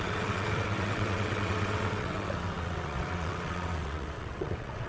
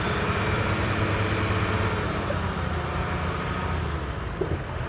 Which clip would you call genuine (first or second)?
second